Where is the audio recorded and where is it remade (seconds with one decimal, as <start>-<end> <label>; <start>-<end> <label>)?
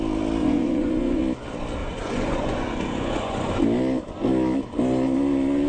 0.0-0.4 recorded; 0.4-1.2 remade; 1.2-1.8 recorded; 1.8-3.5 remade; 3.5-5.7 recorded